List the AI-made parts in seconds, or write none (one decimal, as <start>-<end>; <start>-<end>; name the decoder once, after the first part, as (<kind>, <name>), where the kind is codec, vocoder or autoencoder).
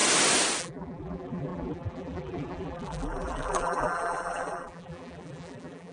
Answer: 0.6-5.9 (vocoder, BigVGAN v2)